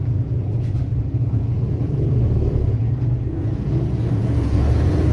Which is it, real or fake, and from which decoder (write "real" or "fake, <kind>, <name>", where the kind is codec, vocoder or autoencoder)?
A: fake, vocoder, Vocos